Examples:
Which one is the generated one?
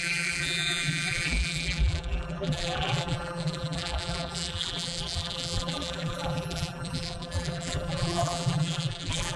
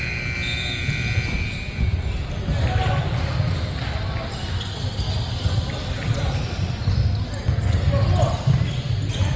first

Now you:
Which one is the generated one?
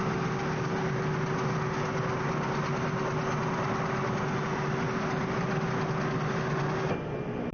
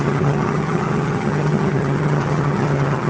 second